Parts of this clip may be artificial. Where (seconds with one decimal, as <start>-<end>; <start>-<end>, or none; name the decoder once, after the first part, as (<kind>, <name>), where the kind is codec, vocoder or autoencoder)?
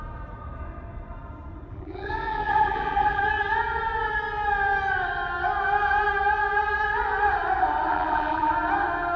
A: 1.7-3.2 (vocoder, BigVGAN v2); 7.9-8.5